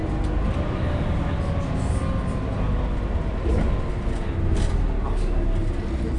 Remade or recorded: recorded